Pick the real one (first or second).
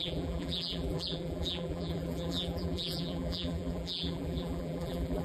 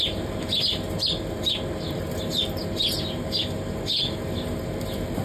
second